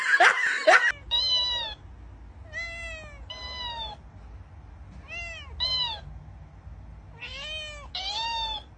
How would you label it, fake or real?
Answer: real